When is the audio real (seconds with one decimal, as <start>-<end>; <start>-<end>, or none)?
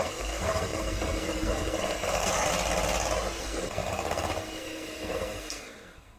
2.5-3.4